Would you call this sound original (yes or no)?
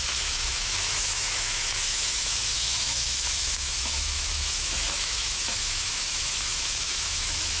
no